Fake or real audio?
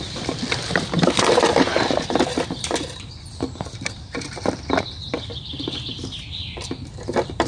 fake